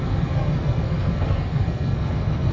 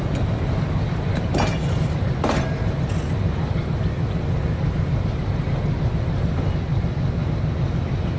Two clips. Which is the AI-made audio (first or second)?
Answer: first